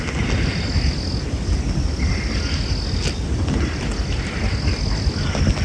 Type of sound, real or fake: real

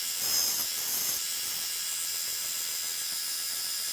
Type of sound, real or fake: fake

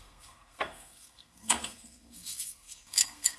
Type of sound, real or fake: fake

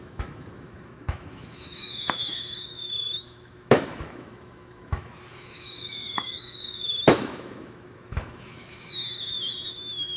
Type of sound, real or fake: fake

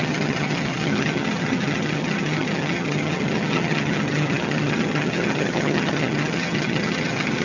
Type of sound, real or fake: fake